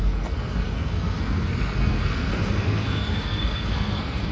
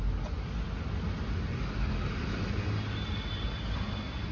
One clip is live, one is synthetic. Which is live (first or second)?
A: second